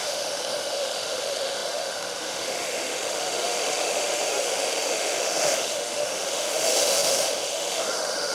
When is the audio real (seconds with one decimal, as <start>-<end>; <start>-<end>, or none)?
none